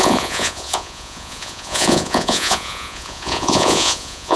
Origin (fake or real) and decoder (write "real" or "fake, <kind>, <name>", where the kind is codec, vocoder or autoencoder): fake, vocoder, Vocos